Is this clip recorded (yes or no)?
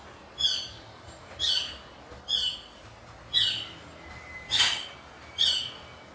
yes